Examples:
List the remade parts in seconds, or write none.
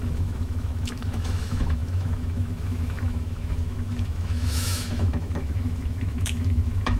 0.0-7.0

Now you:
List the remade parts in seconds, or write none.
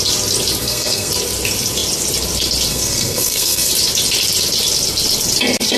0.6-1.1; 2.7-3.7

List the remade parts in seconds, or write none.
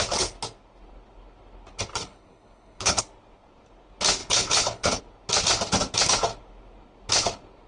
1.9-3.0; 4.2-5.0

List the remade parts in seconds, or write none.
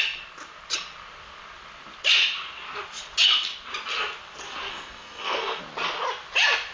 4.7-5.6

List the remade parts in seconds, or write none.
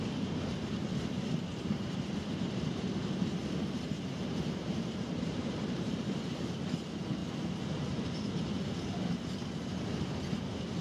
1.5-6.2